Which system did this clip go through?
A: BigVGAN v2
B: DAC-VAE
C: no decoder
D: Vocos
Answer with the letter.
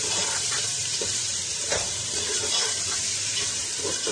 A